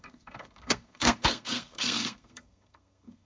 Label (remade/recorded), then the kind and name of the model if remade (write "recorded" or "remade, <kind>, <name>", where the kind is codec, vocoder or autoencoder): remade, codec, SNAC